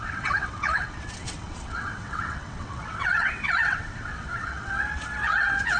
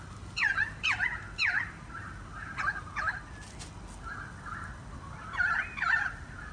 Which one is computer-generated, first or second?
first